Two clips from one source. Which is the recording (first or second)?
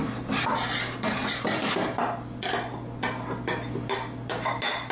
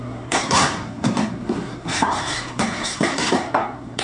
first